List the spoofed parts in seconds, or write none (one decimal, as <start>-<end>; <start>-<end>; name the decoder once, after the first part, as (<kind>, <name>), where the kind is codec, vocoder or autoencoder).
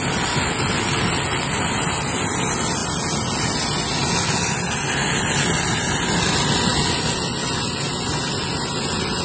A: none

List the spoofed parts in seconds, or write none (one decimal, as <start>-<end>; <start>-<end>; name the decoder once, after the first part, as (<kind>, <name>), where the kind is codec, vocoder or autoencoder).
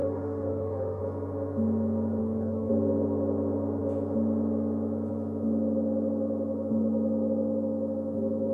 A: 0.0-1.0 (autoencoder, DAC-VAE); 2.2-2.7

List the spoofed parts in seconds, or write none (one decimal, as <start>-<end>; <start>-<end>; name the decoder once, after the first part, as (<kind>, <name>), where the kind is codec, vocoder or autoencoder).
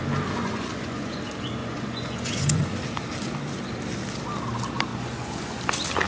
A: 0.4-1.2 (vocoder, Vocos); 1.6-2.6; 4.9-5.6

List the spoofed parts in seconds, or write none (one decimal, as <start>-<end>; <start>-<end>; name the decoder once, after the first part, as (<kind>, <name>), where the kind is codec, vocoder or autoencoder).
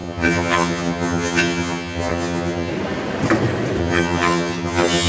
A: 0.0-2.7 (vocoder, HiFi-GAN); 3.8-5.1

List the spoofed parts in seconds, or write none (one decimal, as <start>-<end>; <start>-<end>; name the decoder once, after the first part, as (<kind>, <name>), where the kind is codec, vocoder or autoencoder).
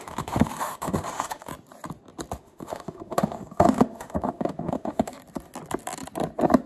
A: 0.0-1.5 (autoencoder, DAC-VAE); 2.4-5.1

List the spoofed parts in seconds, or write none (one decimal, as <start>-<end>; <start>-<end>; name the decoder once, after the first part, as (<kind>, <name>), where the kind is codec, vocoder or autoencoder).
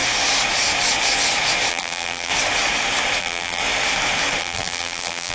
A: 1.7-2.3 (vocoder, BigVGAN v2); 3.2-3.6; 4.4-5.3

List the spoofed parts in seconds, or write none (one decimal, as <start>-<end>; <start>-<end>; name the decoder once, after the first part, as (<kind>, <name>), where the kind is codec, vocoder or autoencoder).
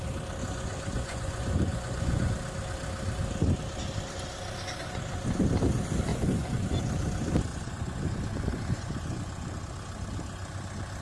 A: 0.4-2.3 (vocoder, Vocos); 6.1-6.8; 7.5-9.5